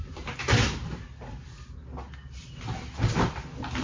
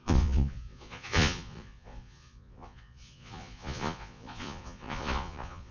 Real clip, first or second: first